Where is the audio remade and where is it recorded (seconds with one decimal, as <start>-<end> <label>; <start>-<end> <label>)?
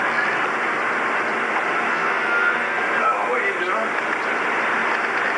0.0-1.9 recorded; 1.9-2.8 remade; 2.8-5.4 recorded